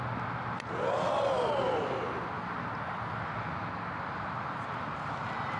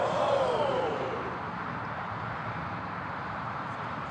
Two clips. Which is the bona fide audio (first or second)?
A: first